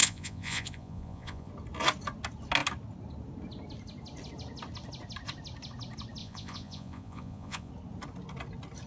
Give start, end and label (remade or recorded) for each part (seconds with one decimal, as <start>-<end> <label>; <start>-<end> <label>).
0.0-1.5 remade; 1.5-6.2 recorded; 6.2-7.7 remade; 7.7-8.9 recorded